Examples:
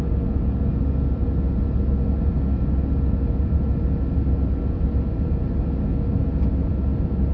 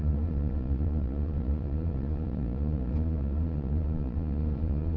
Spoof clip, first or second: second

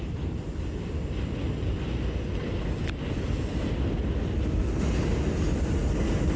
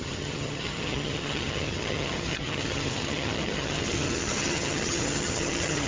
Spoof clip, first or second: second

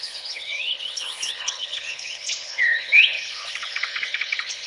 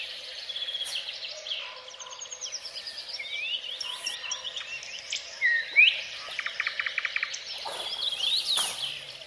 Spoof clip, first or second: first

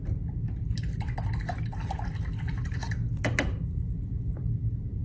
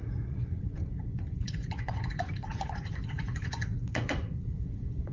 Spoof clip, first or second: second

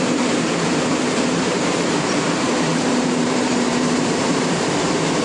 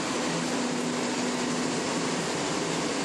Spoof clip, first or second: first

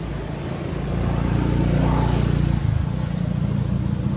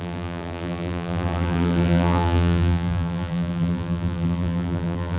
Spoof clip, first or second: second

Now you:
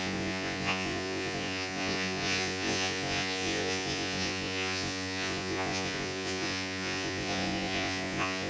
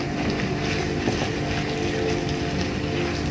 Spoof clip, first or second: first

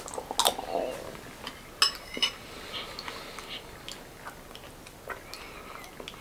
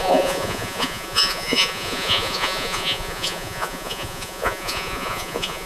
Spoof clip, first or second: second